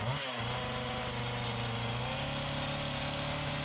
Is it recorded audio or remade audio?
recorded